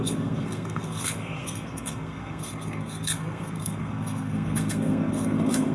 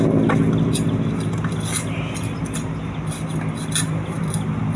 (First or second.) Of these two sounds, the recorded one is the second